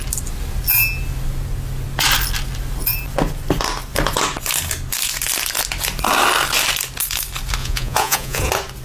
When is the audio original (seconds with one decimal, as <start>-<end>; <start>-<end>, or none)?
0.0-7.6; 8.4-8.8